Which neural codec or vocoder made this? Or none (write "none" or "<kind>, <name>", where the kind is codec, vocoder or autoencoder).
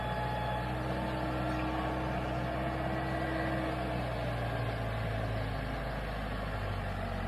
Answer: none